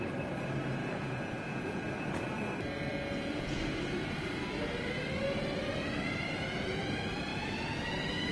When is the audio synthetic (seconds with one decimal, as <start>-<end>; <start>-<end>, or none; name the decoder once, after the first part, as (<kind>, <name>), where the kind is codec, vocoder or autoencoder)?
0.8-2.0 (vocoder, Vocos); 2.9-3.6; 7.3-7.8